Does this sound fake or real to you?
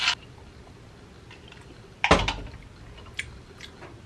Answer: real